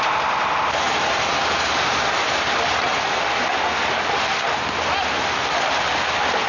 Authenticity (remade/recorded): recorded